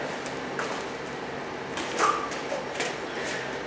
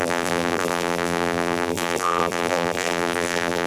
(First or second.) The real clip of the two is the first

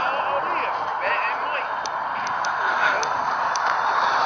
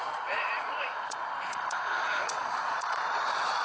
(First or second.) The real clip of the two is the first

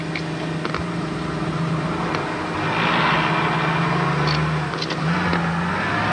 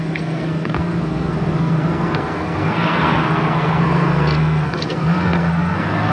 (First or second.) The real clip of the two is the first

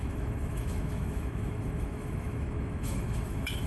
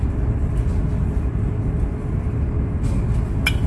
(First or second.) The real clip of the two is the second